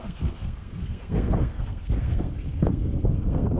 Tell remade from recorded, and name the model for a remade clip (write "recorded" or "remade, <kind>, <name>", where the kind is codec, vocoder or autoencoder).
remade, codec, SNAC